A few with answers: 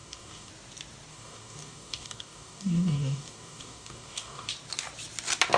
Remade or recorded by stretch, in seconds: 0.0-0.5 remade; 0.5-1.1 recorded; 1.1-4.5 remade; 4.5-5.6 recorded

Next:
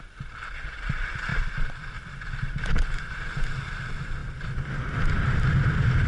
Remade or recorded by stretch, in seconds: 0.0-1.3 recorded; 1.3-3.1 remade; 3.1-6.1 recorded

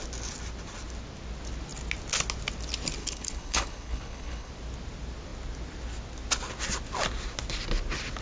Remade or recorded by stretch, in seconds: 0.0-3.0 recorded; 3.0-4.5 remade; 4.5-8.2 recorded

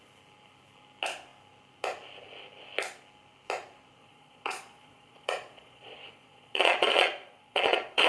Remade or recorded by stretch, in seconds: 0.0-4.0 recorded; 4.0-8.1 remade